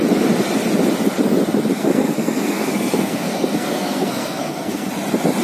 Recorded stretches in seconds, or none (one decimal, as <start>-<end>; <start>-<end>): 0.0-1.7; 4.9-5.4